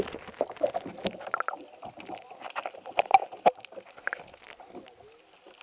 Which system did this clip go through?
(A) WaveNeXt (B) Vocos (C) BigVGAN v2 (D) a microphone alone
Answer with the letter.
D